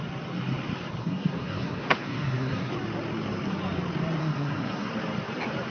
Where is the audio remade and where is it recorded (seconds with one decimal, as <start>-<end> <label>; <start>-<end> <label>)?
0.0-1.0 recorded; 1.0-2.7 remade; 2.7-4.2 recorded; 4.2-4.9 remade; 4.9-5.7 recorded